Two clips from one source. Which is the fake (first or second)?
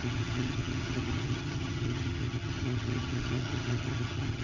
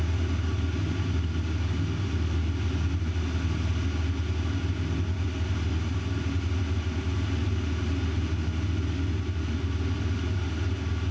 first